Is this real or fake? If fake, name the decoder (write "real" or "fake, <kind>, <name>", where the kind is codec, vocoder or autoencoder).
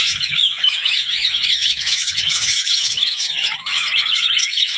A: fake, autoencoder, DAC-VAE